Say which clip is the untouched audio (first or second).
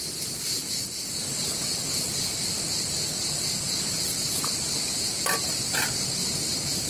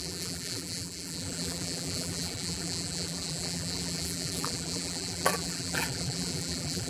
first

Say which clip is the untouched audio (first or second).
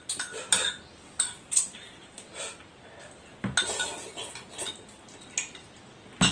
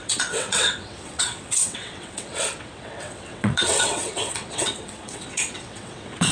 first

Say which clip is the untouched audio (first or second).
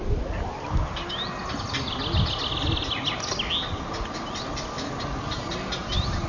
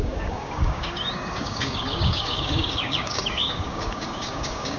first